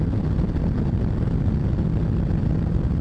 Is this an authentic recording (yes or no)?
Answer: yes